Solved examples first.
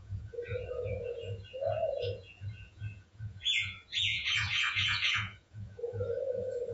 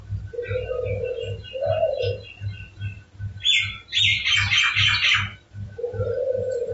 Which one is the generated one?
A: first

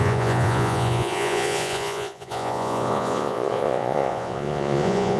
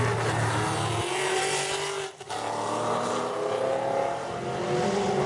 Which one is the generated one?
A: first